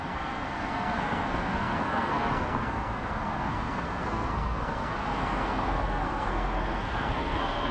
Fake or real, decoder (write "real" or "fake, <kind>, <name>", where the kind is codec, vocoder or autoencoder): fake, codec, SNAC